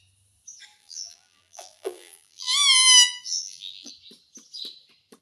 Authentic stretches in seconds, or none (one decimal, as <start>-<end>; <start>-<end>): 0.0-0.8; 3.9-5.2